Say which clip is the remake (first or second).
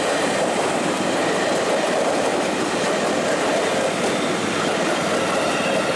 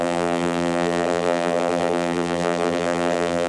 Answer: second